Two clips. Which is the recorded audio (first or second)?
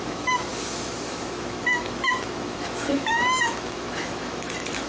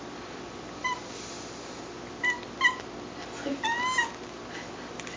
second